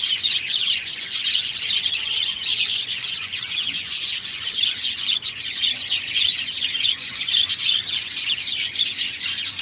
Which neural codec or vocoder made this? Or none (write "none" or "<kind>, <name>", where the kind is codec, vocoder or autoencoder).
vocoder, Vocos